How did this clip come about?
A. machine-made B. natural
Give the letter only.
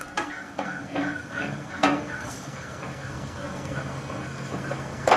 A